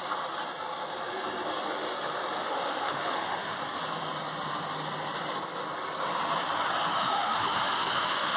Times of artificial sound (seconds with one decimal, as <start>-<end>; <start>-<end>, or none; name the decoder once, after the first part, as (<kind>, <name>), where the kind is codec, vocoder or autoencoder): 2.4-3.6 (autoencoder, DAC-VAE); 6.9-8.4